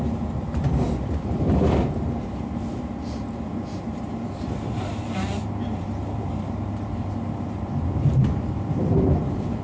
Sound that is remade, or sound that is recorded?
remade